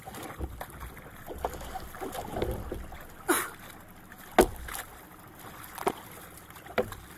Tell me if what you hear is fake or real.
real